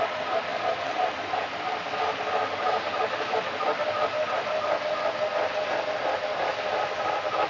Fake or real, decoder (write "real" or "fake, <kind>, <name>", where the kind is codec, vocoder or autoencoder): real